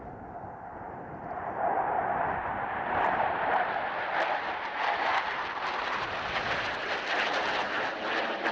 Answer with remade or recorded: recorded